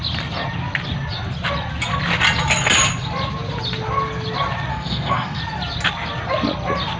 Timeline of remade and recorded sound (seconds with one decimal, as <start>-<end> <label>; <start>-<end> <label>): 0.0-4.7 recorded; 4.7-5.4 remade; 5.4-7.0 recorded